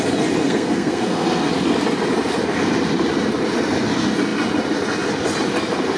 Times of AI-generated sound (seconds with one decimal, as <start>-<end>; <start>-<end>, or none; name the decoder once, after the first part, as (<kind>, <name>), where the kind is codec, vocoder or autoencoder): 0.4-1.5 (codec, SNAC)